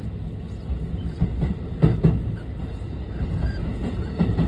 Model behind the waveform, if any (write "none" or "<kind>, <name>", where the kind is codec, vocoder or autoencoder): none